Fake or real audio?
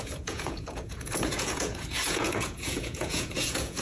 fake